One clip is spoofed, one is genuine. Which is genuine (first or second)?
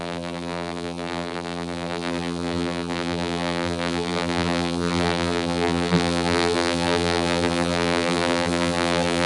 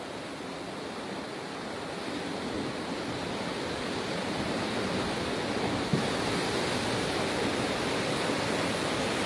second